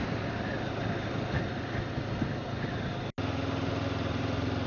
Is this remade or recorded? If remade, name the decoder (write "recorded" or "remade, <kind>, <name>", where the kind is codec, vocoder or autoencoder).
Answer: recorded